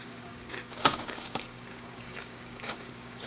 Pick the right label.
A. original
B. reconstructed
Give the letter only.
B